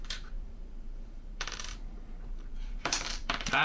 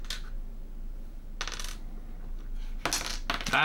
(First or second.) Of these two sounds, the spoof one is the first